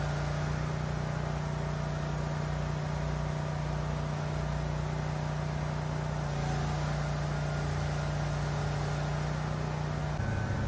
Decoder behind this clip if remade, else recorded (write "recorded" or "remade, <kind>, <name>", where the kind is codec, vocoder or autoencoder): recorded